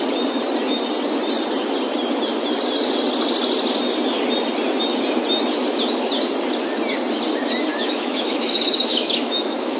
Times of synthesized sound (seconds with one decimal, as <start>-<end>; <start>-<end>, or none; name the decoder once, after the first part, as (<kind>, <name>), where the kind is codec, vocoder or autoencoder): 7.7-9.8 (autoencoder, DAC-VAE)